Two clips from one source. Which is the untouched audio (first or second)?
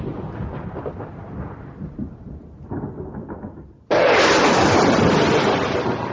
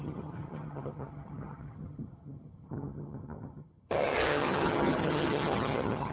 first